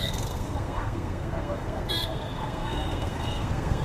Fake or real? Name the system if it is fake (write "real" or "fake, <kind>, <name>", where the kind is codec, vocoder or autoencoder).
fake, codec, SNAC